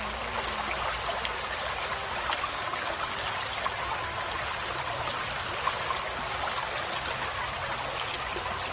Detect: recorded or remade recorded